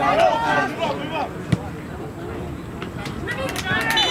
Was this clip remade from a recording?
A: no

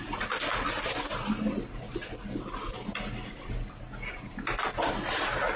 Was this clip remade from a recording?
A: no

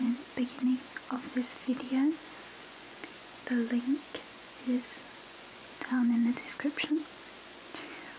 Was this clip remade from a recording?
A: yes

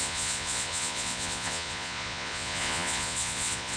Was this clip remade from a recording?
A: yes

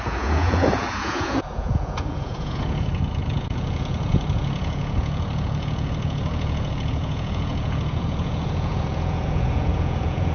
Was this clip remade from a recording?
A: yes